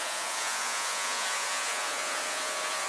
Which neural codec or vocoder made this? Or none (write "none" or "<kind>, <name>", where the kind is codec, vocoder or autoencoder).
vocoder, Vocos